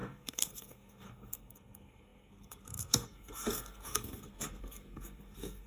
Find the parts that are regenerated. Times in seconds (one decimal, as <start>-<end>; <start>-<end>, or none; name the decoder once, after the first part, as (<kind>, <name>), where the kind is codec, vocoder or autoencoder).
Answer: 0.0-5.7 (codec, SNAC)